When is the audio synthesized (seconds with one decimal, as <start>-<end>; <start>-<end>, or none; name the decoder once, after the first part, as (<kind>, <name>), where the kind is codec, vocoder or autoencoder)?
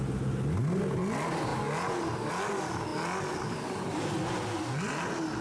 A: none